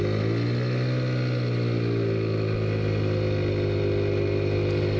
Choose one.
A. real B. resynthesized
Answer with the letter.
A